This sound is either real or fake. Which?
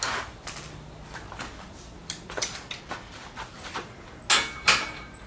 real